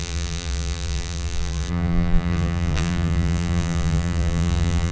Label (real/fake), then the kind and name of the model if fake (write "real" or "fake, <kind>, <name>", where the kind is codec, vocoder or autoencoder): fake, vocoder, BigVGAN v2